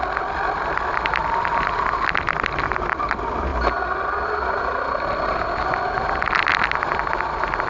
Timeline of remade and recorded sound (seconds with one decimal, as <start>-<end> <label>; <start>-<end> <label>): 0.0-7.7 recorded